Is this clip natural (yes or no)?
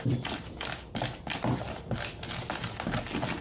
yes